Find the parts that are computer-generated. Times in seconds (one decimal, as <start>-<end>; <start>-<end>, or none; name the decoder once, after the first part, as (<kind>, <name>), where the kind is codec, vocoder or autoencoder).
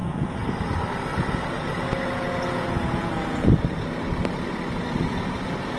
0.0-0.7 (vocoder, Vocos); 1.1-3.5